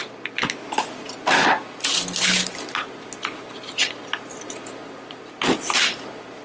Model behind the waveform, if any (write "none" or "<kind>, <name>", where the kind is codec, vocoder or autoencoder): none